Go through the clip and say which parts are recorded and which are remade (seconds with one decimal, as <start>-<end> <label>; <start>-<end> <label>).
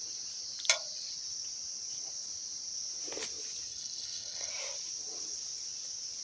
0.0-3.7 recorded; 3.7-4.5 remade; 4.5-6.2 recorded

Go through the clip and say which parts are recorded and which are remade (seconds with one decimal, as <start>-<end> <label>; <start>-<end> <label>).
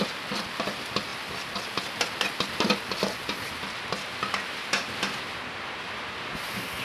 0.0-6.8 recorded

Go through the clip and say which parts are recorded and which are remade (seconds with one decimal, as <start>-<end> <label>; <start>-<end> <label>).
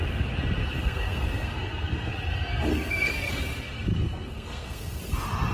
0.0-0.6 recorded; 0.6-2.1 remade; 2.1-2.7 recorded; 2.7-3.3 remade; 3.3-3.9 recorded; 3.9-5.0 remade; 5.0-5.5 recorded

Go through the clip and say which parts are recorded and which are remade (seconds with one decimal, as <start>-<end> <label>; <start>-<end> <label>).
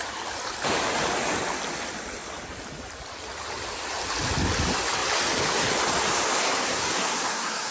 0.0-6.4 recorded; 6.4-7.7 remade